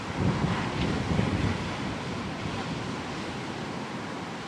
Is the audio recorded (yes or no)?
yes